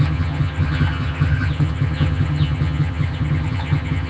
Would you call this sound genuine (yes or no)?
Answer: no